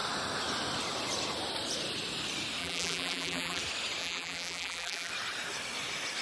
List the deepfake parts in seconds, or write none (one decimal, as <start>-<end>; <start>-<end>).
2.6-3.6; 4.0-5.1